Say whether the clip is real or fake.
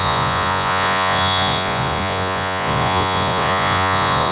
fake